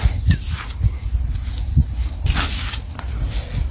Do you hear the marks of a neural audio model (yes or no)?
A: no